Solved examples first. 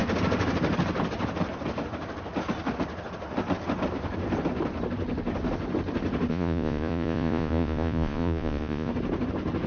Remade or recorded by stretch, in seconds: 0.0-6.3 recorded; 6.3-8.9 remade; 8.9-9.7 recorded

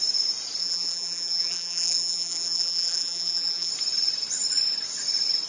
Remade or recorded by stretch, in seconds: 0.0-0.6 recorded; 0.6-3.7 remade; 3.7-5.5 recorded

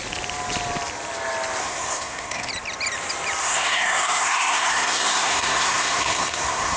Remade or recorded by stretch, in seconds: 0.0-1.6 recorded; 1.6-2.5 remade; 2.5-3.4 recorded; 3.4-6.8 remade

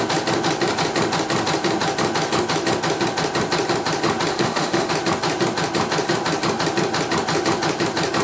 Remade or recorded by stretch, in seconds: 0.0-4.3 recorded; 4.3-4.9 remade; 4.9-8.2 recorded